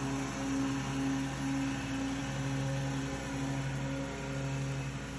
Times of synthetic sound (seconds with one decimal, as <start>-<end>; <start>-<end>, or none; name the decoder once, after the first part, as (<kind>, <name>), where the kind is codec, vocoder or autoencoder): none